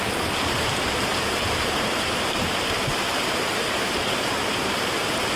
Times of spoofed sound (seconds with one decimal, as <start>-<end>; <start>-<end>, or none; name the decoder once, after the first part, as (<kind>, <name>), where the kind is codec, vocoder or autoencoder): 0.0-5.4 (vocoder, BigVGAN v2)